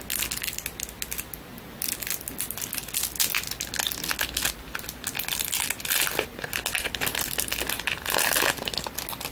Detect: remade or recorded recorded